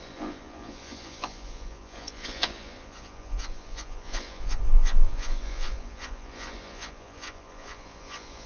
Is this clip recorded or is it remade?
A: remade